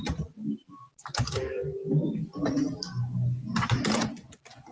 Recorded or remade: recorded